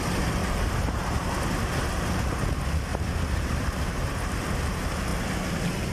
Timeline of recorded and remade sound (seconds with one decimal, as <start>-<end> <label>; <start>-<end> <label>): 0.0-0.4 recorded; 0.4-1.3 remade; 1.3-2.9 recorded; 2.9-4.4 remade; 4.4-5.9 recorded